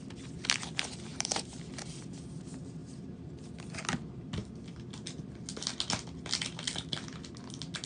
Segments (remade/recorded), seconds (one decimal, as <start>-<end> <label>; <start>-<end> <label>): 0.0-1.1 recorded; 1.1-1.7 remade; 1.7-2.8 recorded; 2.8-3.3 remade; 3.3-7.9 recorded